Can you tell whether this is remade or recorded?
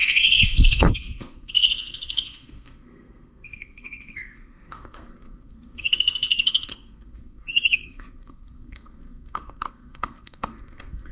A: remade